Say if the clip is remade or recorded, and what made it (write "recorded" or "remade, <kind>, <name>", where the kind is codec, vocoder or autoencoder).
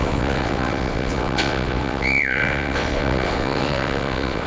remade, vocoder, WaveNeXt